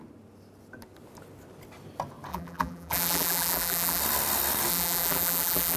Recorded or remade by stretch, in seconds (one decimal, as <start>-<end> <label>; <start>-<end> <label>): 0.0-2.3 recorded; 2.3-4.0 remade; 4.0-4.7 recorded; 4.7-5.8 remade